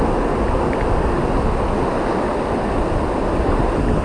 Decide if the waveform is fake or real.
real